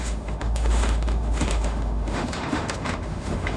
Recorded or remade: remade